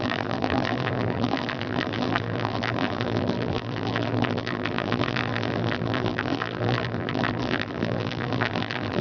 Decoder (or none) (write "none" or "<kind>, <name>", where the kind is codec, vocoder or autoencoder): vocoder, BigVGAN v2